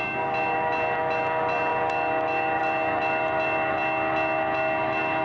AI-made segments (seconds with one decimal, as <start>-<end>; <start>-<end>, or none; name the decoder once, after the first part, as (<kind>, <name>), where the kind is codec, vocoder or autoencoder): none